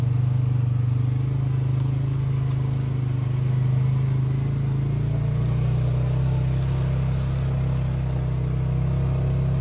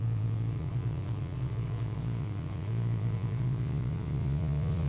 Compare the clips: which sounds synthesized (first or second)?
second